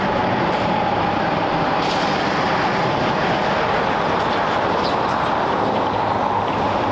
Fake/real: fake